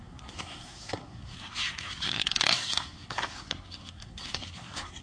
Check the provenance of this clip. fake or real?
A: fake